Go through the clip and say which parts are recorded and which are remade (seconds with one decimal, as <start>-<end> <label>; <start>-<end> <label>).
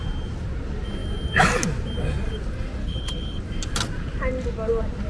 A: 0.0-2.8 recorded; 2.8-3.4 remade; 3.4-5.1 recorded